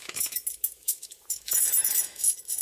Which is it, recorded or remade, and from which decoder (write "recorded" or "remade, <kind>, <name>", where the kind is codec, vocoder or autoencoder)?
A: remade, autoencoder, DAC-VAE